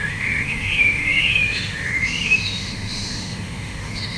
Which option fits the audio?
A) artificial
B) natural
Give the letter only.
A